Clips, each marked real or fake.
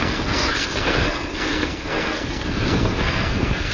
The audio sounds fake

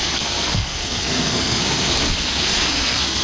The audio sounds fake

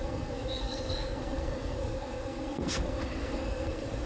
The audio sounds fake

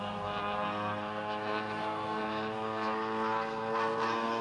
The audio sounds fake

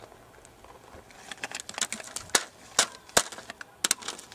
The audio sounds real